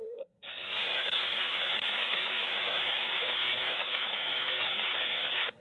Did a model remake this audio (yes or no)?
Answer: yes